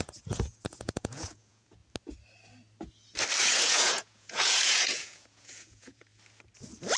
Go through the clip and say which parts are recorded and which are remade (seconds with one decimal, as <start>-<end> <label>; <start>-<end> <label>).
0.0-1.8 remade; 1.8-3.4 recorded; 3.4-6.1 remade; 6.1-7.0 recorded